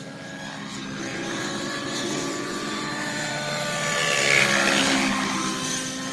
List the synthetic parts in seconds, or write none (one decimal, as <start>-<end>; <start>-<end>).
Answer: 1.1-3.3